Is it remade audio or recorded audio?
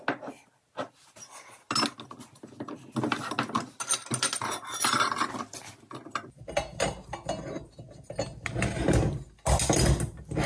recorded